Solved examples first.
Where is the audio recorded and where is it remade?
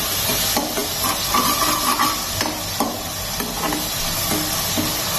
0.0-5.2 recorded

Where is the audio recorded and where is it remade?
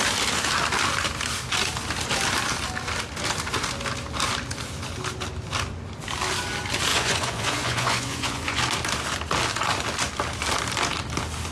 0.0-6.9 recorded; 6.9-8.6 remade; 8.6-11.5 recorded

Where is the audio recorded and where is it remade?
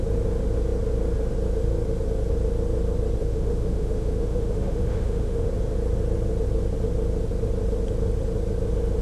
0.0-3.2 recorded; 3.2-5.5 remade; 5.5-9.0 recorded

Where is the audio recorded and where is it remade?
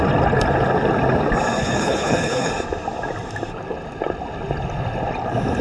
0.0-1.6 recorded; 1.6-2.5 remade; 2.5-5.6 recorded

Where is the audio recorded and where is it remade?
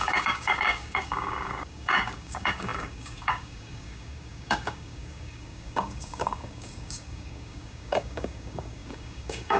0.0-9.6 remade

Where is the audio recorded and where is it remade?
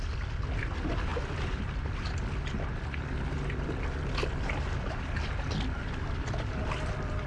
0.0-7.3 recorded